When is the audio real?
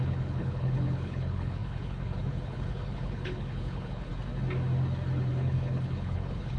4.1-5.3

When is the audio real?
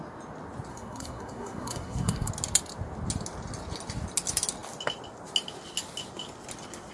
0.0-0.7; 2.3-6.9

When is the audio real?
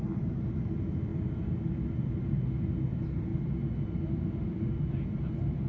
0.0-5.7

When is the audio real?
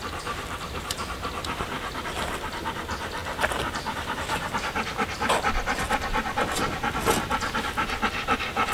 none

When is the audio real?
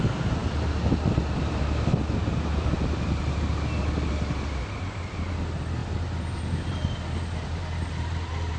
0.0-8.6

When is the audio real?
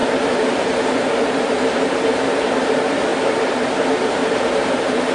3.1-3.8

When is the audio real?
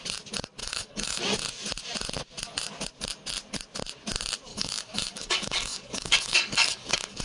0.0-0.6; 1.2-4.5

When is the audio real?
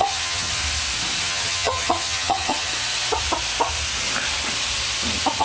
0.6-1.2; 2.7-5.4